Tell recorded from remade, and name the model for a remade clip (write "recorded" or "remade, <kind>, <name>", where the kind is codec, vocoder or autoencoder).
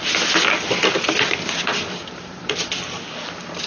recorded